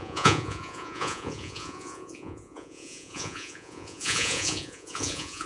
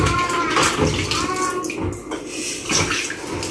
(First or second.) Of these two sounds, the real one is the second